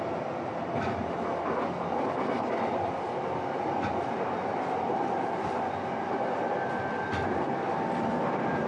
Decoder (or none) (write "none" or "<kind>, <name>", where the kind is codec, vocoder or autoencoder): none